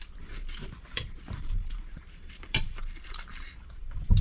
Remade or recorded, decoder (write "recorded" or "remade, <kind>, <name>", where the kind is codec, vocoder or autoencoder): remade, vocoder, BigVGAN v2